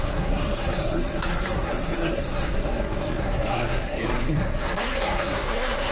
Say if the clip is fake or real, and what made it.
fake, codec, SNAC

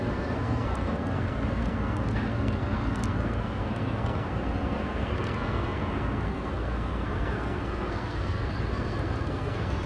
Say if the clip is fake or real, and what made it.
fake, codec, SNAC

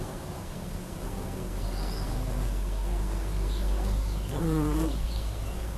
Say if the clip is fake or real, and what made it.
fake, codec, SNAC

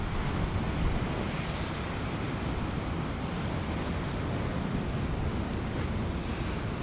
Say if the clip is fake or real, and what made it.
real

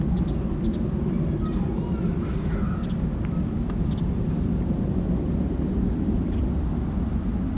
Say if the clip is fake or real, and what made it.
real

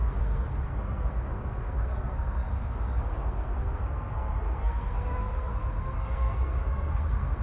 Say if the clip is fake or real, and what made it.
fake, codec, SNAC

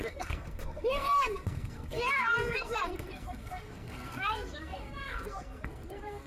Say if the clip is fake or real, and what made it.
fake, codec, SNAC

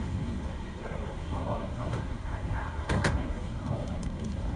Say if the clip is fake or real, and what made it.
fake, codec, SNAC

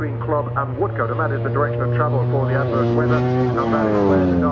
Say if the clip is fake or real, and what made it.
real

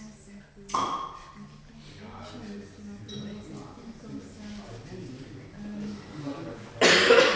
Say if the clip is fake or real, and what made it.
real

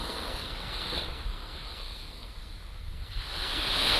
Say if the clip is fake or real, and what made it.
fake, codec, SNAC